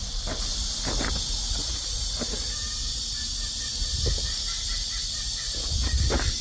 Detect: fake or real real